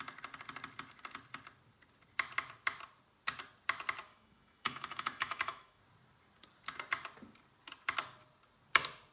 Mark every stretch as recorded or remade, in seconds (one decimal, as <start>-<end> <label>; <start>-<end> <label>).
0.0-4.1 recorded; 4.1-5.8 remade; 5.8-9.1 recorded